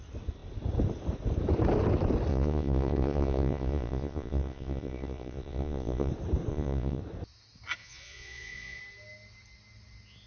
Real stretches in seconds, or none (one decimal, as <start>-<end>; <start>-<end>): 0.0-2.3; 6.1-6.5; 7.0-7.8; 8.8-10.3